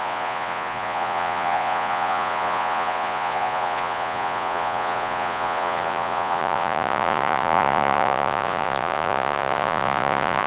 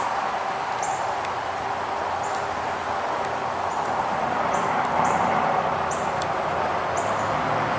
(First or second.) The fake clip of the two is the first